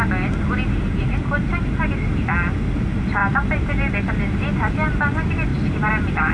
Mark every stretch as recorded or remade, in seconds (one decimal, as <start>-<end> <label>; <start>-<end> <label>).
0.0-0.8 recorded; 0.8-1.4 remade; 1.4-3.2 recorded; 3.2-4.1 remade; 4.1-5.5 recorded; 5.5-6.3 remade